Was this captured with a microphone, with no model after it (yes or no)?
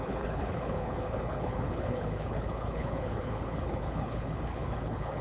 no